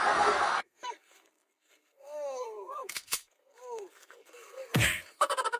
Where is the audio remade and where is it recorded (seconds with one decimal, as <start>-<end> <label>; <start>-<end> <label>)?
0.0-5.6 remade